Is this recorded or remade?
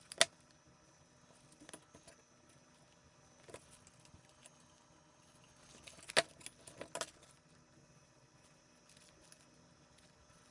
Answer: recorded